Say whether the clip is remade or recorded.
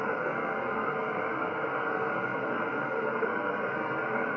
remade